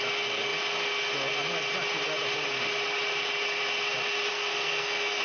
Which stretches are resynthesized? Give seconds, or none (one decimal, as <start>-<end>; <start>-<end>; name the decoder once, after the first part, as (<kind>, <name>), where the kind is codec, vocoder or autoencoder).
4.3-5.2 (codec, SNAC)